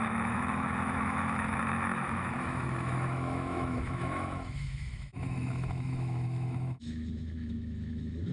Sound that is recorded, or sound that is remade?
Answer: remade